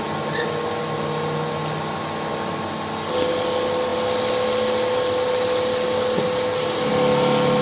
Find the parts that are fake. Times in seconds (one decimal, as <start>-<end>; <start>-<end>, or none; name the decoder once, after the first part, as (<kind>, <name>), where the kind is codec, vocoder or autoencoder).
none